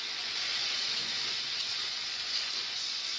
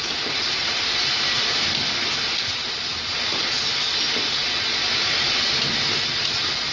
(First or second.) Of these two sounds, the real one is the second